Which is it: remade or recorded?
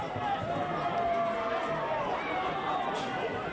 recorded